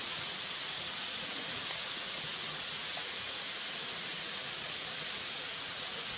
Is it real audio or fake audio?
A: fake